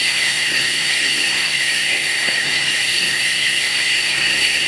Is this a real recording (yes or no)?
no